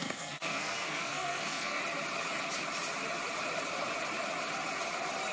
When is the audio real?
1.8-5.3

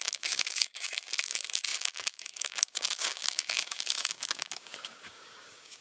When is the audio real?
none

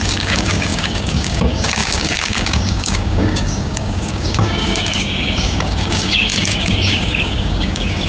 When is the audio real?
none

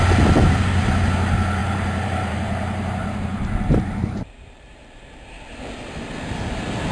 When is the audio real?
0.0-0.4; 1.0-1.6; 5.7-6.9

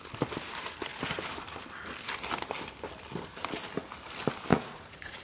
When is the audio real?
0.0-4.5

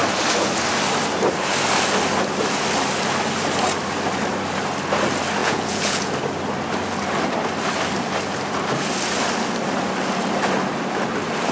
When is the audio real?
0.0-5.4; 6.1-11.5